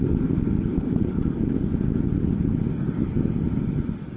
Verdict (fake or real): real